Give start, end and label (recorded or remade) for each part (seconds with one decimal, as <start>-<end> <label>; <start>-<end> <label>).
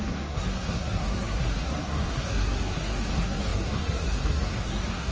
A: 0.0-5.1 remade